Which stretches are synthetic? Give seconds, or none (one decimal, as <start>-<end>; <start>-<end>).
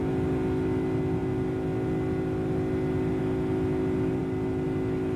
none